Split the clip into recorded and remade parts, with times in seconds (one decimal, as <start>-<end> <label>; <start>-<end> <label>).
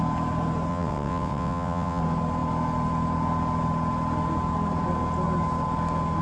0.0-0.7 recorded; 0.7-2.0 remade; 2.0-6.2 recorded